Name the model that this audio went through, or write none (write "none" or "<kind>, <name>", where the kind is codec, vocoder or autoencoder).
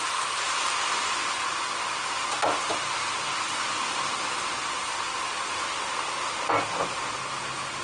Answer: none